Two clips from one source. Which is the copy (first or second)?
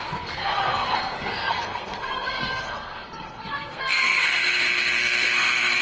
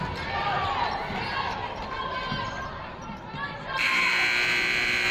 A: first